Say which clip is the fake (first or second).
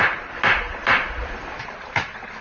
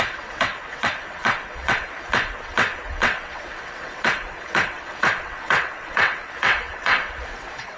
second